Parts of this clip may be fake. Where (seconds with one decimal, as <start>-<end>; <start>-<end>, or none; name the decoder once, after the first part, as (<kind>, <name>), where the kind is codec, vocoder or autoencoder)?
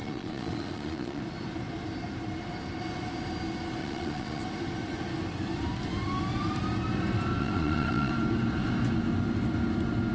0.0-1.2 (vocoder, Vocos); 3.8-4.4; 7.4-8.1